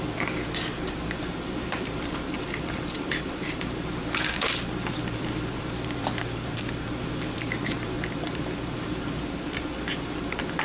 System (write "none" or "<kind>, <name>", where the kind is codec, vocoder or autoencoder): vocoder, BigVGAN v2